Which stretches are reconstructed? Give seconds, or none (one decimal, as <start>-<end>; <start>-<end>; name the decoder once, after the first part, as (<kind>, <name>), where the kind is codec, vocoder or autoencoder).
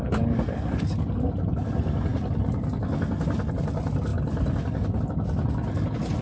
none